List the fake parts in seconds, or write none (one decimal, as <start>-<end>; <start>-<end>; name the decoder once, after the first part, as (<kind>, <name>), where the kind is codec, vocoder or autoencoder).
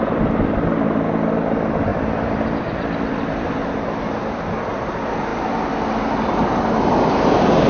0.0-5.3 (vocoder, BigVGAN v2)